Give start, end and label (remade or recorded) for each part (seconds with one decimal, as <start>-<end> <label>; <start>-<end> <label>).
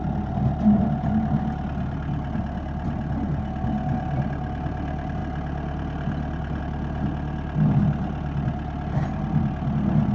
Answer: 0.0-10.1 recorded